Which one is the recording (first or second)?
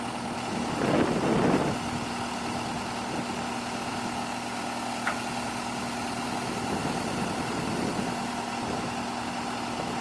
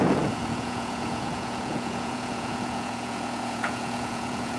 first